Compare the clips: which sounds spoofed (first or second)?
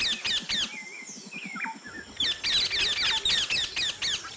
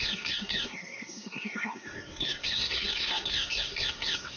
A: second